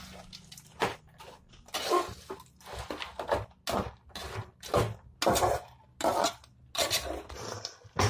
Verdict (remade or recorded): recorded